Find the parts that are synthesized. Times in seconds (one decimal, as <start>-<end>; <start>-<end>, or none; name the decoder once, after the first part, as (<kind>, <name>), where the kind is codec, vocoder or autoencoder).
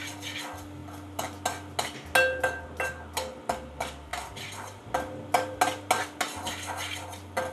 none